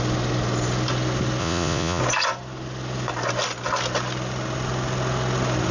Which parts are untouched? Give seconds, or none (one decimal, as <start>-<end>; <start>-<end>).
0.0-1.4; 2.0-5.7